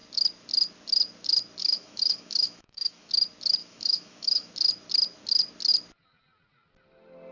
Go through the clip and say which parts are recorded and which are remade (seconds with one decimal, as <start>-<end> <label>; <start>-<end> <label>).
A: 0.0-1.6 recorded; 1.6-3.1 remade; 3.1-3.6 recorded; 3.6-4.5 remade; 4.5-7.3 recorded